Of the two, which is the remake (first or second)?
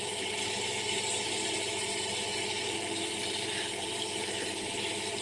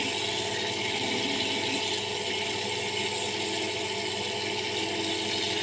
first